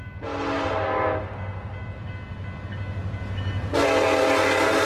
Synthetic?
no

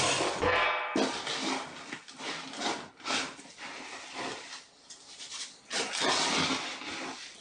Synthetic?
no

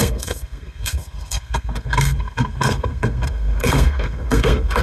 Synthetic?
yes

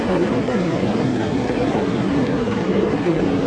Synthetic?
yes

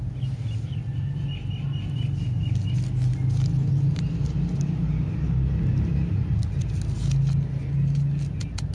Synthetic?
no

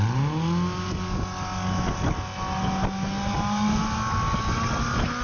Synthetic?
no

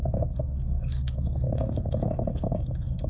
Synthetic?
yes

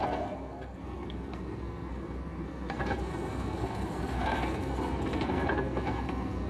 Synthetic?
yes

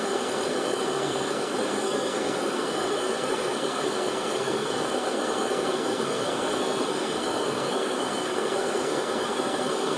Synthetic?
yes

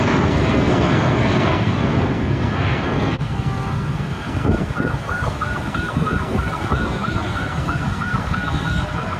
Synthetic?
yes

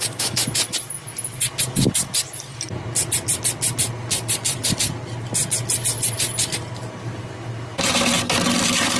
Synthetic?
no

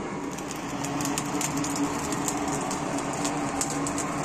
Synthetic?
no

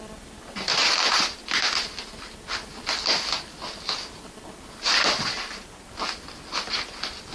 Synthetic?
no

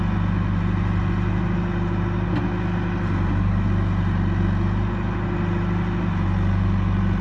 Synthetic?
no